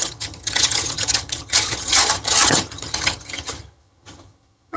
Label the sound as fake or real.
fake